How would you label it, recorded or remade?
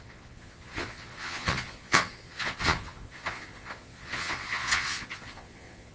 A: remade